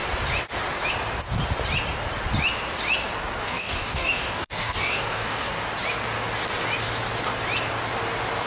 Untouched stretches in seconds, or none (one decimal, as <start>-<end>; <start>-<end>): 0.0-3.4; 5.5-8.5